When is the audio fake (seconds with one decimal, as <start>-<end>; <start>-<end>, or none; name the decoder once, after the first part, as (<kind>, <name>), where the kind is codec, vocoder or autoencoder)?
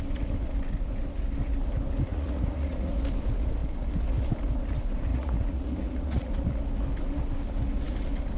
2.1-2.9 (vocoder, Vocos); 5.1-6.3